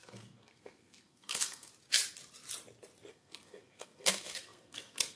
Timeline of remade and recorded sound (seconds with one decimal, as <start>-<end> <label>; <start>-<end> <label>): 0.0-1.7 remade; 1.7-3.1 recorded; 3.1-5.2 remade